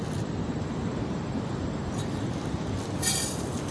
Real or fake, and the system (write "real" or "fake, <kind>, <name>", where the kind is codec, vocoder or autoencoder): real